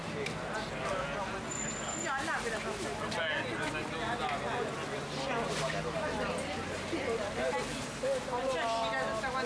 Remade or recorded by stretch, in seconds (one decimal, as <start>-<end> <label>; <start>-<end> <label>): 0.0-9.5 recorded